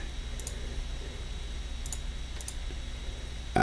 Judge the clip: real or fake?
real